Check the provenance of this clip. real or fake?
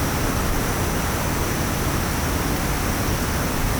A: real